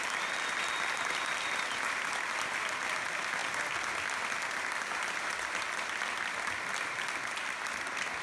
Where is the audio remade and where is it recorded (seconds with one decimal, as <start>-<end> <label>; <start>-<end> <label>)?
0.0-8.2 recorded